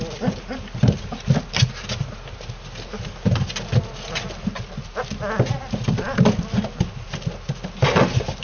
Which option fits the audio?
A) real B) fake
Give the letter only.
A